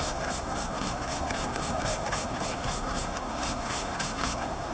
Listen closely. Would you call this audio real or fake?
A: fake